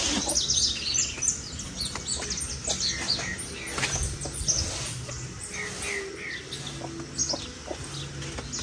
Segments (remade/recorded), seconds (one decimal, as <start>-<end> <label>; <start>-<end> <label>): 0.0-8.6 recorded